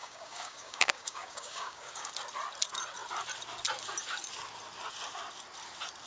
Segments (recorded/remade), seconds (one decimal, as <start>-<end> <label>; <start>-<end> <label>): 0.0-2.1 remade; 2.1-6.1 recorded